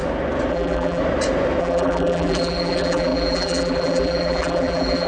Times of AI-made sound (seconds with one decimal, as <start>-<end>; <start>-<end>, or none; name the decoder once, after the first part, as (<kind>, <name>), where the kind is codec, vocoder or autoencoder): 0.5-1.0 (vocoder, BigVGAN v2); 1.6-5.1